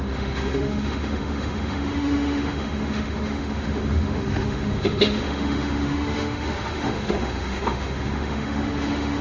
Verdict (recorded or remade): remade